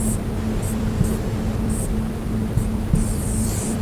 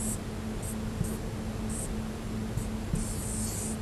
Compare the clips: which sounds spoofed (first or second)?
first